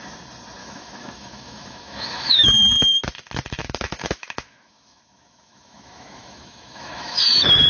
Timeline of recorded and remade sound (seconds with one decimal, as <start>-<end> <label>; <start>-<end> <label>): 0.0-0.6 recorded; 0.6-3.0 remade; 3.0-3.6 recorded; 3.6-7.2 remade; 7.2-7.7 recorded

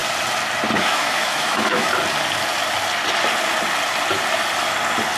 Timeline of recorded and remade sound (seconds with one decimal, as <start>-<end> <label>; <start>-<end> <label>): 0.0-0.8 recorded; 0.8-1.9 remade; 1.9-5.2 recorded

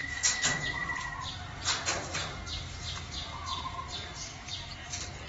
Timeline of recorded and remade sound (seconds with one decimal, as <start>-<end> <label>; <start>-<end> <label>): 0.0-1.2 recorded; 1.2-2.4 remade; 2.4-5.3 recorded

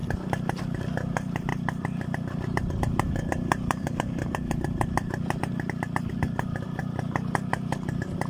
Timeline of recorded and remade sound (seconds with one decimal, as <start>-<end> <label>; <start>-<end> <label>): 0.0-1.5 recorded; 1.5-6.1 remade; 6.1-8.3 recorded

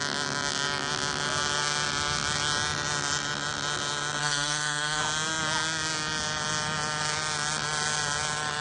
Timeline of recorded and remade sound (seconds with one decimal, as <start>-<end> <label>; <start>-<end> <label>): 0.0-4.2 recorded; 4.2-5.0 remade; 5.0-8.6 recorded